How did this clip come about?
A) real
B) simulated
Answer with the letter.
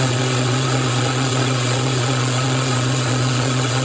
B